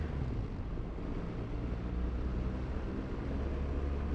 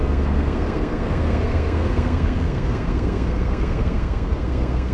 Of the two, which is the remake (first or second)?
second